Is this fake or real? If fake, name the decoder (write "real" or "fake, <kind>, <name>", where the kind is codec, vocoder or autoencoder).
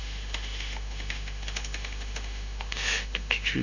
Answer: fake, autoencoder, DAC-VAE